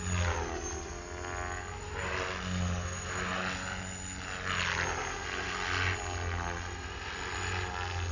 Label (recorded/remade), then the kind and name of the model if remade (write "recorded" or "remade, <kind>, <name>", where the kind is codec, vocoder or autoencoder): recorded